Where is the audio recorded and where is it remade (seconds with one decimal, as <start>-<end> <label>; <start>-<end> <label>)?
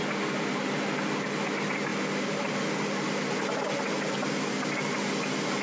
0.0-5.6 recorded